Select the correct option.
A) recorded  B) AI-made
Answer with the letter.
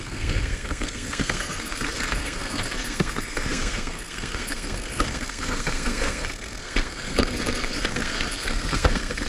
B